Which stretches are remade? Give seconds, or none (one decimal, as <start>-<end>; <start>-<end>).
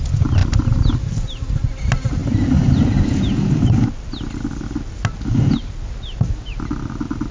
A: none